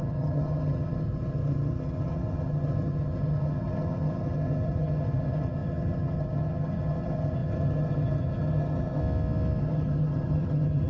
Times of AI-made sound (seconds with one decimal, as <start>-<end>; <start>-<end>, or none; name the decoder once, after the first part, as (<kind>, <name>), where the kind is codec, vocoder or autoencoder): 0.0-9.0 (vocoder, HiFi-GAN); 9.6-10.9